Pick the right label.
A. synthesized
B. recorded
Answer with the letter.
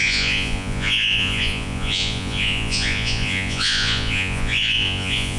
A